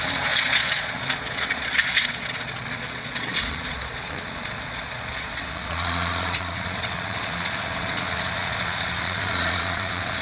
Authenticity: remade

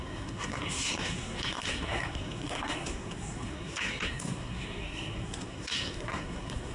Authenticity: remade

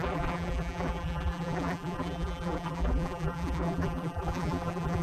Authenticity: remade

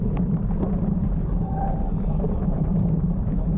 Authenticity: remade